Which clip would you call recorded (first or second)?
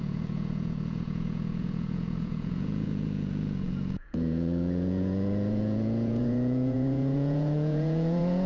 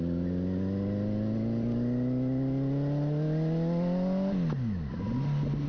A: second